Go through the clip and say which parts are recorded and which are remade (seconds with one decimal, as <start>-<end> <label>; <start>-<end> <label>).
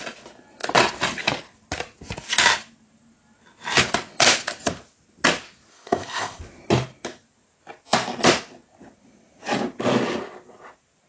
0.0-5.7 recorded; 5.7-6.4 remade; 6.4-11.1 recorded